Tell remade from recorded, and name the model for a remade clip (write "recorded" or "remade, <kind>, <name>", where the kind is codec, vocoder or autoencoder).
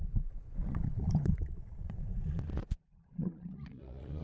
remade, vocoder, Vocos